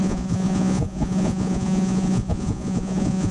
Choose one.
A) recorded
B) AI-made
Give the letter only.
B